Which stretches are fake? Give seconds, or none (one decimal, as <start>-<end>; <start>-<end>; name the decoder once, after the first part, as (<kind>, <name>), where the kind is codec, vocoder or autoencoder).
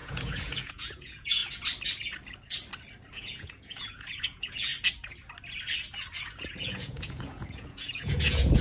0.0-1.4 (vocoder, Vocos); 3.1-4.7; 6.3-8.6